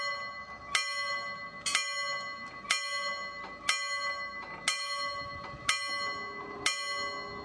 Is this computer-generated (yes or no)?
no